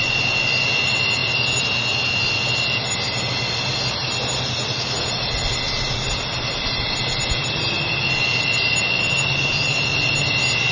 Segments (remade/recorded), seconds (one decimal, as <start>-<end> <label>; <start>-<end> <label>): 0.0-10.7 recorded